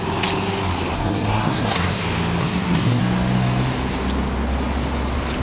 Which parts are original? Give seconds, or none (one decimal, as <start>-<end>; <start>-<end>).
0.0-0.9; 2.0-2.4; 3.0-5.4